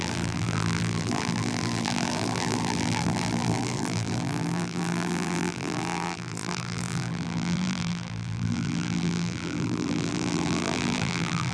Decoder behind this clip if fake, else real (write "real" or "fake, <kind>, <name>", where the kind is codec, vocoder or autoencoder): fake, vocoder, BigVGAN v2